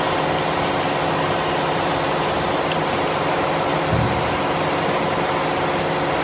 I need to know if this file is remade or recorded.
recorded